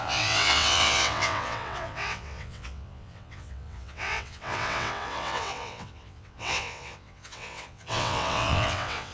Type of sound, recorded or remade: remade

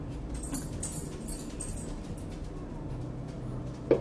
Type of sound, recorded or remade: recorded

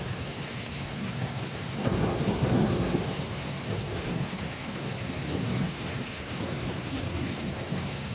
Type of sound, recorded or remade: remade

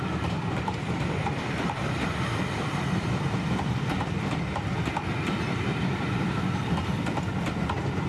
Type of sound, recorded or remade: remade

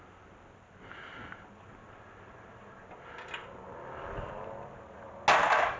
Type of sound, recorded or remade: recorded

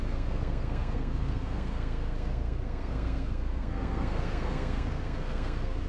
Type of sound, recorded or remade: remade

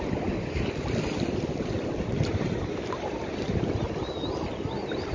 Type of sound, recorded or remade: recorded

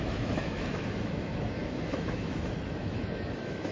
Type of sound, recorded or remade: remade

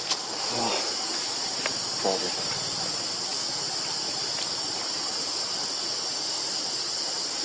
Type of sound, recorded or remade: recorded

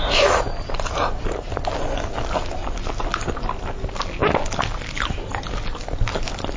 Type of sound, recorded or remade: recorded